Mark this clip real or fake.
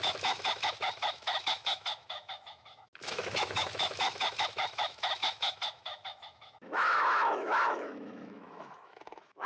fake